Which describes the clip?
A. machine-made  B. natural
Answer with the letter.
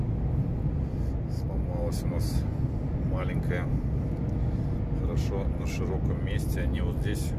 B